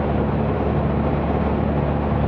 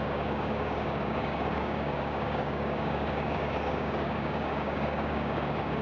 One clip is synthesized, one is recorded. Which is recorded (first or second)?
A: first